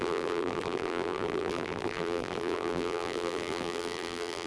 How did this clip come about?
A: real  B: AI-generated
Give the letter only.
B